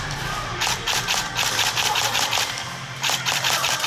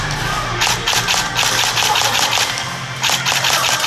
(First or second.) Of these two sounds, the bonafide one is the second